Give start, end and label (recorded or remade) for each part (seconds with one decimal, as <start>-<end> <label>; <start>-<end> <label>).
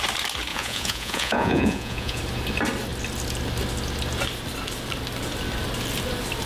0.0-0.5 recorded; 0.5-2.2 remade; 2.2-6.5 recorded